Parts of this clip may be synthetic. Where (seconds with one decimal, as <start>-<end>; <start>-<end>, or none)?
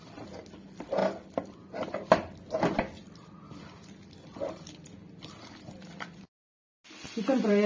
none